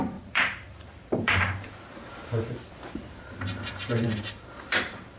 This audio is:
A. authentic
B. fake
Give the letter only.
B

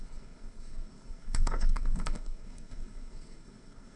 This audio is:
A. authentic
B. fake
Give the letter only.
B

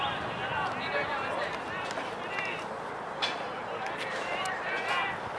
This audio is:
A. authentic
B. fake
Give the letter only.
A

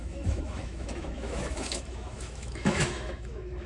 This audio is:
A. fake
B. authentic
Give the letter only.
A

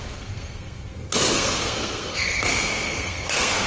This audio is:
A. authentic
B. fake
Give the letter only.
B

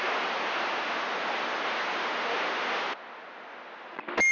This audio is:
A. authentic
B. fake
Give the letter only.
A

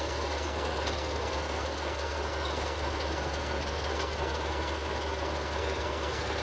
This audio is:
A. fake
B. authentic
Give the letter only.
A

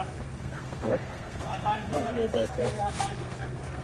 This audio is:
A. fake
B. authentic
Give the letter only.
A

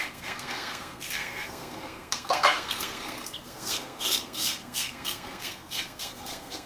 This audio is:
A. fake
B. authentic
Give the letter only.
A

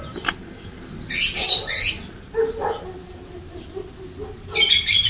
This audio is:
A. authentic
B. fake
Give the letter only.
A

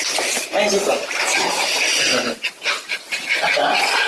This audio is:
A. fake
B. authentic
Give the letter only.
B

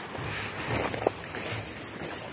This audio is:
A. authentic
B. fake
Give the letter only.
A